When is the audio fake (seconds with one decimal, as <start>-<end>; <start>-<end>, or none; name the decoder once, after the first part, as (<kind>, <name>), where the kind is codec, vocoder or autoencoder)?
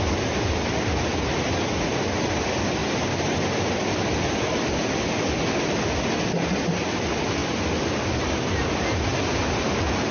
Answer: 2.8-4.4 (vocoder, BigVGAN v2); 7.4-8.4